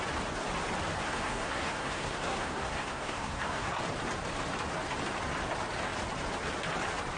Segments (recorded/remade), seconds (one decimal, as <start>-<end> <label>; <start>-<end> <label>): 0.0-1.0 recorded; 1.0-3.8 remade; 3.8-7.2 recorded